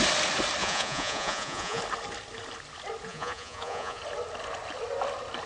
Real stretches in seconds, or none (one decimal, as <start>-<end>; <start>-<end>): 0.0-0.6; 1.8-3.1; 4.0-5.5